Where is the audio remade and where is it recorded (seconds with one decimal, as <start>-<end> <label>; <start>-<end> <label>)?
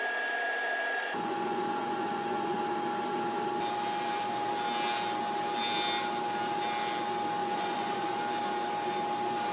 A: 0.0-1.0 recorded; 1.0-2.6 remade; 2.6-7.4 recorded; 7.4-8.2 remade; 8.2-9.5 recorded